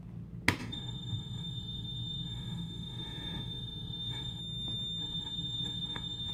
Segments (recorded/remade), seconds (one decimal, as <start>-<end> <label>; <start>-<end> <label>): 0.0-0.6 recorded; 0.6-4.4 remade; 4.4-5.0 recorded; 5.0-6.3 remade